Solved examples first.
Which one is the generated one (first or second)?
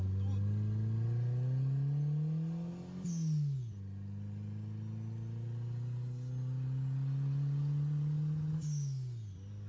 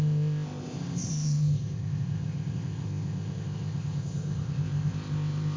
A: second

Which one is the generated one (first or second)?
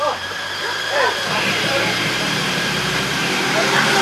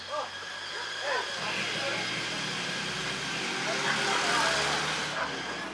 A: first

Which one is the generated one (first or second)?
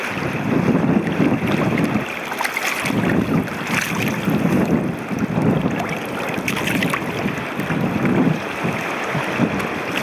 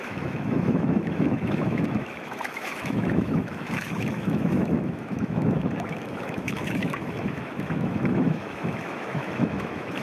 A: second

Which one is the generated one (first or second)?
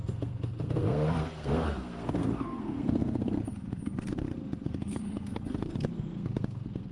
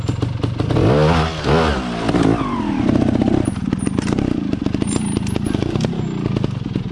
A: first